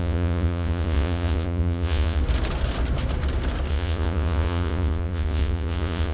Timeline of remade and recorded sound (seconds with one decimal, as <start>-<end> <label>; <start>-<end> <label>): 0.0-2.2 remade; 2.2-3.7 recorded; 3.7-6.1 remade